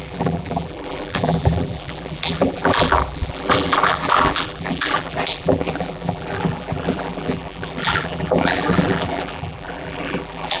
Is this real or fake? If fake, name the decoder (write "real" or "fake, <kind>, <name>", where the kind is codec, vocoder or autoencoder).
fake, vocoder, BigVGAN v2